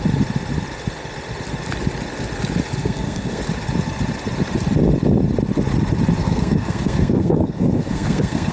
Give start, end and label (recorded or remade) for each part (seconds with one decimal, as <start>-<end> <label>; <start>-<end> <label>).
0.0-2.8 recorded; 2.8-3.4 remade; 3.4-6.2 recorded; 6.2-8.5 remade